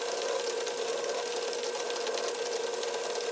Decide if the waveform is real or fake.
real